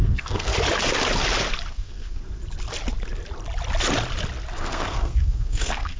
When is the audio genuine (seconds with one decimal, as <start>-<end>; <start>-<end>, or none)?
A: 0.5-1.7; 2.2-4.5